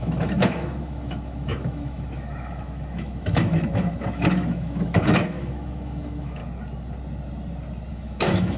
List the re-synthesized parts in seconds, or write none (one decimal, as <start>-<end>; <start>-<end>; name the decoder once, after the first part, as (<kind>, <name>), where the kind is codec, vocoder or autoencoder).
0.0-6.4 (autoencoder, DAC-VAE); 7.9-8.6